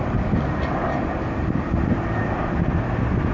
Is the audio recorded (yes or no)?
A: yes